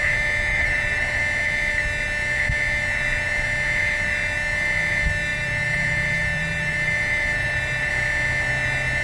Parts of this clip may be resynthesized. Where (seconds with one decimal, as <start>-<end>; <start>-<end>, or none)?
0.5-1.2; 5.3-7.9